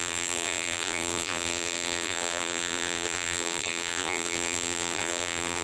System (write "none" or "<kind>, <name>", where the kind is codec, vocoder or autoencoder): vocoder, BigVGAN v2